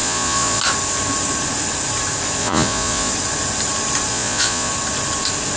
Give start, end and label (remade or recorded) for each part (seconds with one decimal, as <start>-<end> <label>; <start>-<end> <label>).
0.0-0.6 remade; 0.6-2.4 recorded; 2.4-3.1 remade; 3.1-4.1 recorded; 4.1-4.7 remade; 4.7-5.6 recorded